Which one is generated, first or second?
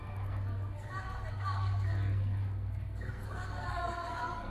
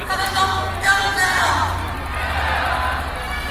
first